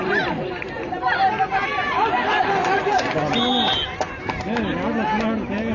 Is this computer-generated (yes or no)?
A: no